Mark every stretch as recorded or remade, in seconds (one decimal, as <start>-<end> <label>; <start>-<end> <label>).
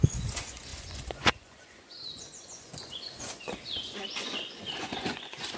0.0-5.6 remade